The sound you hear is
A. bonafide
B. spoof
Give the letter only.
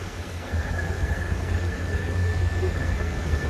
B